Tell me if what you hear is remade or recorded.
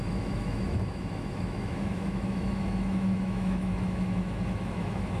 remade